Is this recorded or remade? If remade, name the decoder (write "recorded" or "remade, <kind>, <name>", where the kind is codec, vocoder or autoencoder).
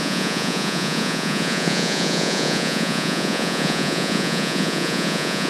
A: remade, vocoder, Vocos